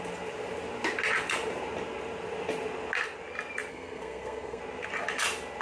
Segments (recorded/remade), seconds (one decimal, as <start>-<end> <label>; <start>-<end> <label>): 0.0-3.7 recorded; 3.7-4.6 remade; 4.6-5.6 recorded